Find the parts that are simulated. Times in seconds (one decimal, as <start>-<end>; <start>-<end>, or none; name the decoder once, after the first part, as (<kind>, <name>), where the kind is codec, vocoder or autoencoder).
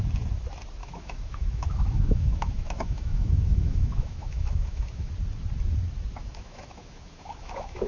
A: 0.8-5.1 (autoencoder, DAC-VAE); 6.2-7.9